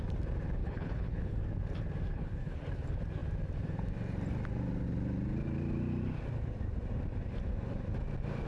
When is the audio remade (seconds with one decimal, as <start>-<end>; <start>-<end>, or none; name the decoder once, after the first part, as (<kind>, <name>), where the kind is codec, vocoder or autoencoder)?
0.6-1.4 (codec, HILCodec); 2.1-2.6